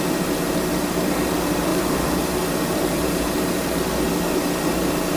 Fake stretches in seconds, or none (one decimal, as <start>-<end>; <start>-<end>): 1.7-3.8